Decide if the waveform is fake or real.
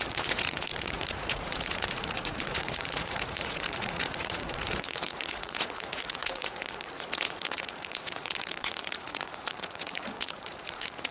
fake